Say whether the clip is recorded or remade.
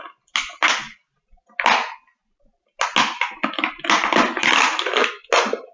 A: recorded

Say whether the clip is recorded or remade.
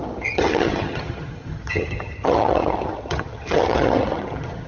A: remade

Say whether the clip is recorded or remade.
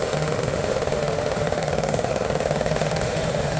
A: remade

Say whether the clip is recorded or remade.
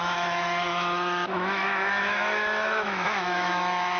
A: remade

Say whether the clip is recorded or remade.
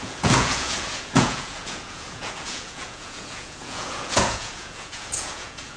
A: remade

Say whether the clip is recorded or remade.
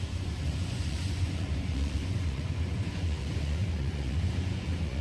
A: remade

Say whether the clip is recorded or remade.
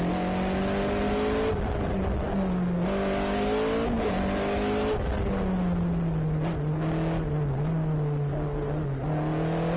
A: recorded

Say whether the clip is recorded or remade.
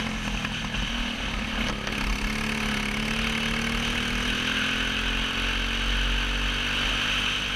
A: recorded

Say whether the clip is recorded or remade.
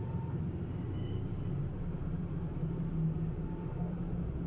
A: recorded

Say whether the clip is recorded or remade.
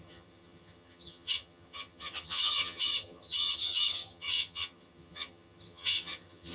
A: remade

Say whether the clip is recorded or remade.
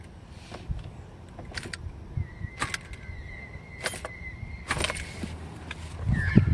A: recorded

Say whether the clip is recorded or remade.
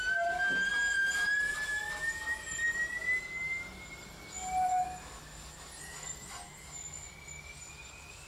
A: recorded